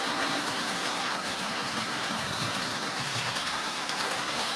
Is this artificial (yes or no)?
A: yes